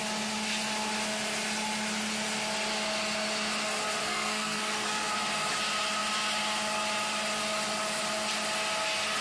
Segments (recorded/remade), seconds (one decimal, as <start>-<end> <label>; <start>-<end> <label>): 0.0-4.0 recorded; 4.0-5.1 remade; 5.1-9.2 recorded